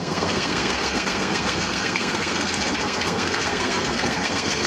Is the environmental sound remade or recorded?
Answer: remade